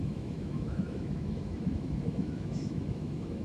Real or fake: fake